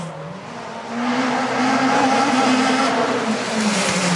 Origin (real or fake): fake